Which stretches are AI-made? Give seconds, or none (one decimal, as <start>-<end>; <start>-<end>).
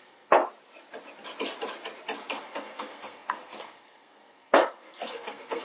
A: 0.0-0.4; 2.3-5.6